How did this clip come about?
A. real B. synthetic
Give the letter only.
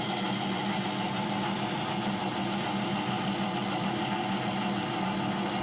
A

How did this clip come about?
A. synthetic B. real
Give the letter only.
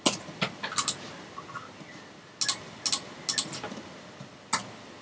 B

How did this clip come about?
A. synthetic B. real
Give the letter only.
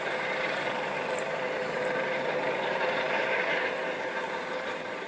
A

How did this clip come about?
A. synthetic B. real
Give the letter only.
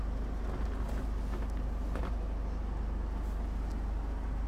B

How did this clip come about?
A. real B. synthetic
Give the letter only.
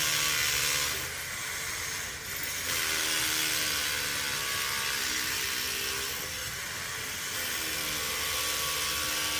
A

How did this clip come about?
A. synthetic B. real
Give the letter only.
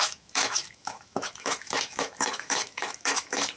A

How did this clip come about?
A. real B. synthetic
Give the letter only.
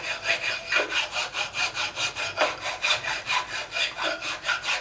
A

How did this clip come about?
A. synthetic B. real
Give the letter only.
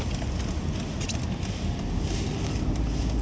B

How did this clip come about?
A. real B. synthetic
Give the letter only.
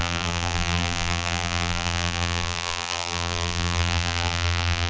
B